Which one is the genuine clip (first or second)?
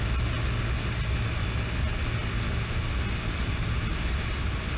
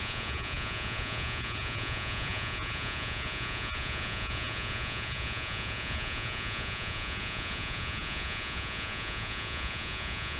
first